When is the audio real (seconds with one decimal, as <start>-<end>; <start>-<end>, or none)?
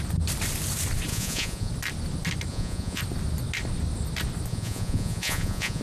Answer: 0.0-1.1; 1.7-2.5; 3.0-4.5